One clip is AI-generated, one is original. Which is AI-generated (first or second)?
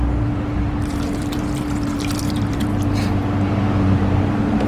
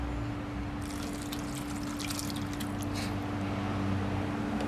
first